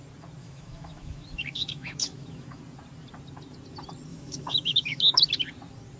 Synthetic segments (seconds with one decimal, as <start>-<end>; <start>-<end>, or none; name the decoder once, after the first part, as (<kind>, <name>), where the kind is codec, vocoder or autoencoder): 0.4-2.6 (autoencoder, DAC-VAE); 4.1-5.3